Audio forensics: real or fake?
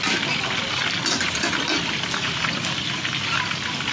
real